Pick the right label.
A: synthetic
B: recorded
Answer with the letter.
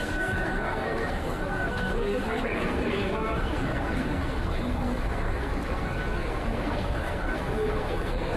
A